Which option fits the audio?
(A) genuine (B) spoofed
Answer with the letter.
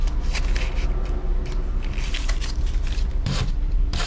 B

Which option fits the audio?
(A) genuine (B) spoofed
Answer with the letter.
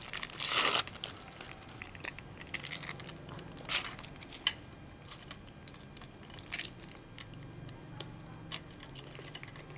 A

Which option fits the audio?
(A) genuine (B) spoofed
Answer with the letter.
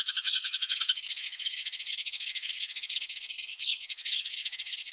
B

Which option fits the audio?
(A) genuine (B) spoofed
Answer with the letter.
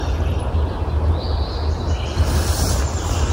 A